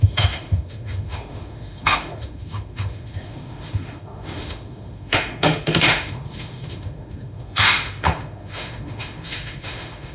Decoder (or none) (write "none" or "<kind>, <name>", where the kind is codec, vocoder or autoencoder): autoencoder, DAC-VAE